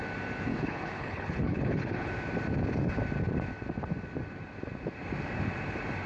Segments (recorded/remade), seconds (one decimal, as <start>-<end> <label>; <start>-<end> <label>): 0.0-0.5 recorded; 0.5-2.1 remade; 2.1-6.1 recorded

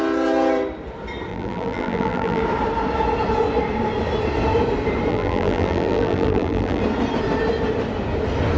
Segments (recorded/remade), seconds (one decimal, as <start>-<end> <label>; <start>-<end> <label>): 0.0-1.3 recorded; 1.3-2.4 remade; 2.4-5.1 recorded; 5.1-6.8 remade; 6.8-8.6 recorded

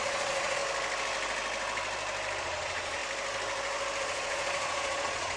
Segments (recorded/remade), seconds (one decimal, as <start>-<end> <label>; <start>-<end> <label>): 0.0-0.6 remade; 0.6-2.4 recorded; 2.4-3.0 remade; 3.0-4.0 recorded; 4.0-5.4 remade

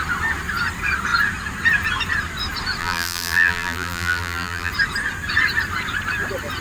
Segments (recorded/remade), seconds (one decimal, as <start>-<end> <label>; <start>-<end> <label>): 0.0-2.8 recorded; 2.8-4.7 remade; 4.7-6.6 recorded